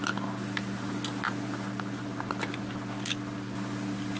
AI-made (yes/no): no